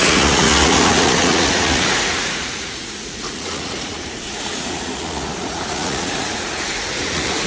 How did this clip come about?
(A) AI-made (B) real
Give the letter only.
A